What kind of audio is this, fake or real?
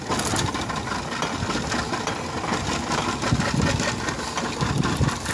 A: real